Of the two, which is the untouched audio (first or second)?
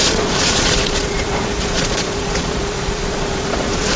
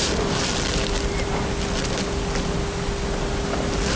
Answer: second